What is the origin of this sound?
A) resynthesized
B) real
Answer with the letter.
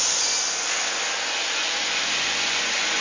A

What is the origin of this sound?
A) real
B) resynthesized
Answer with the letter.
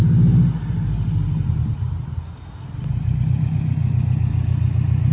A